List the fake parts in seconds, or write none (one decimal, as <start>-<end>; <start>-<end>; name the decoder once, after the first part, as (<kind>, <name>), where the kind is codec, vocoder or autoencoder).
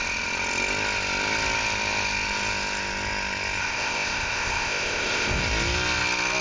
3.6-5.4 (codec, ZipCodec)